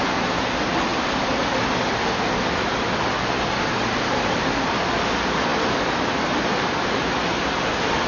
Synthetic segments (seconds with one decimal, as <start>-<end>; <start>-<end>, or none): 4.1-4.7; 5.5-8.1